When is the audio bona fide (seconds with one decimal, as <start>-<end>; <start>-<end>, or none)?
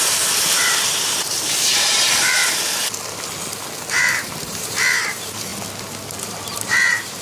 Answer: 2.4-3.9; 5.5-6.2